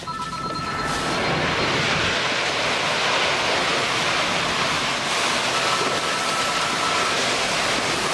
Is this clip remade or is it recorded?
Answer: recorded